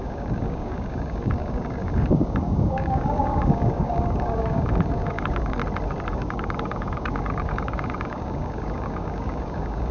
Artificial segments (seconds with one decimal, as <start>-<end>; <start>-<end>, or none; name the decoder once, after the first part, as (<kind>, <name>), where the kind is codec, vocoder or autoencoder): 0.0-5.6 (codec, DAC); 6.1-9.9